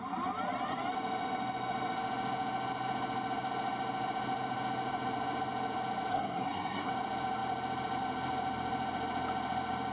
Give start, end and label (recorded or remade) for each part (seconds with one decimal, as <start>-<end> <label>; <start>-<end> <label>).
0.0-6.1 recorded; 6.1-6.9 remade; 6.9-9.9 recorded